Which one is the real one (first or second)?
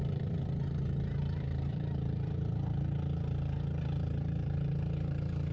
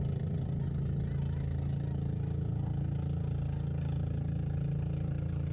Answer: second